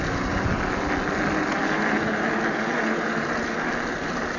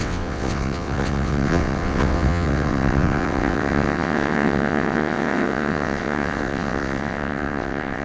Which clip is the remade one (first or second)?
second